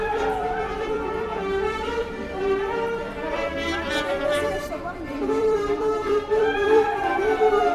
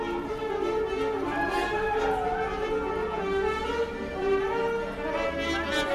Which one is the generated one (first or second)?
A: first